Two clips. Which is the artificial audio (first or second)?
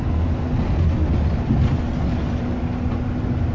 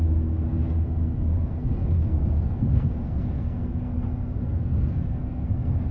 second